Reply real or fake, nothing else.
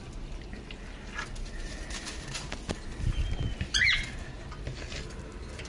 real